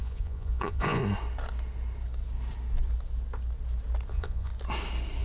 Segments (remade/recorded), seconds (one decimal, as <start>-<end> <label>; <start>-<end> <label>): 0.0-1.0 remade; 1.0-4.1 recorded; 4.1-4.5 remade; 4.5-5.2 recorded